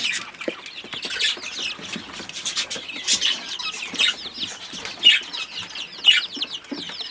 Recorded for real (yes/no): yes